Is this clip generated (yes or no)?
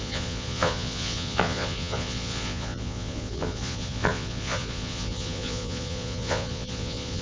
yes